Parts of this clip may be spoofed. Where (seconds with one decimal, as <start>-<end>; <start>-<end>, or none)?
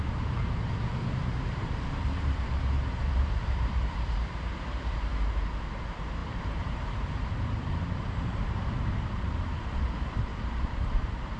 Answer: 0.0-5.1; 5.7-11.4